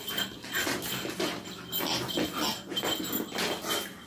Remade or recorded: recorded